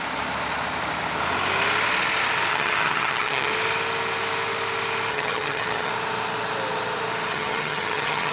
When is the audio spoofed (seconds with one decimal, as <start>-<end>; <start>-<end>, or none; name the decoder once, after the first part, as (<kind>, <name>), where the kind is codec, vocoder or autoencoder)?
2.5-3.5 (vocoder, HiFi-GAN); 5.1-5.9; 7.3-8.3